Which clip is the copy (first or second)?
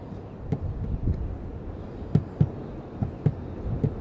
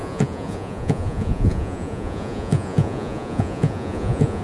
second